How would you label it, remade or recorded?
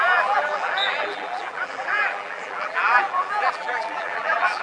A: remade